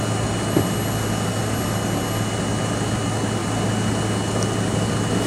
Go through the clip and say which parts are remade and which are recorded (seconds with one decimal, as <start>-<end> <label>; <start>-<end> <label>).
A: 0.0-5.3 recorded